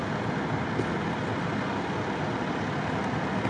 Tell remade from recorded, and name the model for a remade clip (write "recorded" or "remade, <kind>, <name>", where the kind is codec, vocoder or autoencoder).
recorded